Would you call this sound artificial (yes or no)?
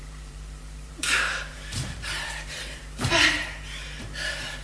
yes